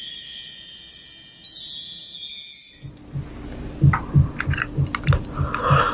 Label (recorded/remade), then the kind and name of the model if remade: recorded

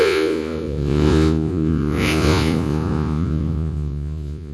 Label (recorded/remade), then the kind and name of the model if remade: remade, vocoder, Vocos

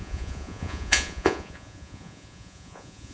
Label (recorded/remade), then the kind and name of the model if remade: remade, vocoder, Vocos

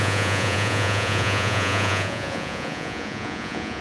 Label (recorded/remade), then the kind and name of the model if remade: remade, vocoder, Vocos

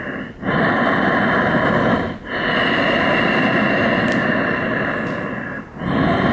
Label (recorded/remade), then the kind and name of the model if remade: recorded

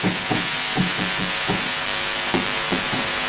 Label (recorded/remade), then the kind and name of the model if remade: recorded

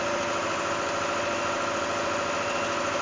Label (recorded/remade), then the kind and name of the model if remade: recorded